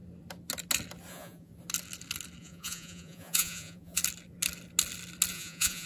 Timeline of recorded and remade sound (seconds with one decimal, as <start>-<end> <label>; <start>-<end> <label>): 0.0-1.1 recorded; 1.1-1.5 remade; 1.5-2.4 recorded; 2.4-4.0 remade; 4.0-5.3 recorded; 5.3-5.9 remade